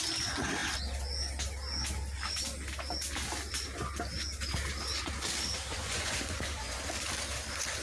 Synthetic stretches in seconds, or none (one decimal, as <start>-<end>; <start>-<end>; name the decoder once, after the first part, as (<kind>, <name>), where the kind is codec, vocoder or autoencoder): 5.7-6.8 (vocoder, Vocos)